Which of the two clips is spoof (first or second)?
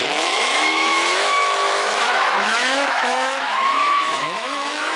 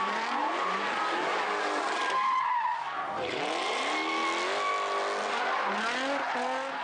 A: first